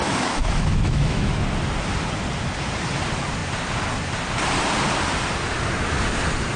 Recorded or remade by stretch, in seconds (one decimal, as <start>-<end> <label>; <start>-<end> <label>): 0.0-1.4 remade; 1.4-6.6 recorded